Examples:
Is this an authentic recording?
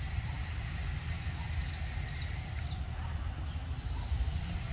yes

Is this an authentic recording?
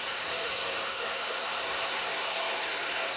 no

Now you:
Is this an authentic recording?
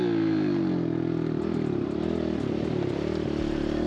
yes